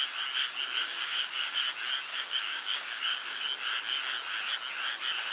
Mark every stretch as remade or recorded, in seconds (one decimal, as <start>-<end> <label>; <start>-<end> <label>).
0.0-0.8 recorded; 0.8-1.6 remade; 1.6-2.1 recorded; 2.1-3.4 remade; 3.4-5.3 recorded